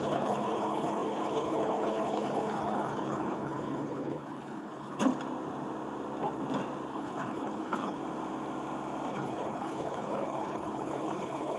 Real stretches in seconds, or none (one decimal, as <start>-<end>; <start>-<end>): 5.1-6.9; 8.0-9.1